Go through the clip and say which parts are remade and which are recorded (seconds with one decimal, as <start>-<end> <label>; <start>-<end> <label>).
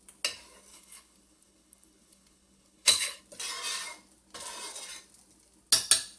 0.0-0.7 recorded; 0.7-3.2 remade; 3.2-6.2 recorded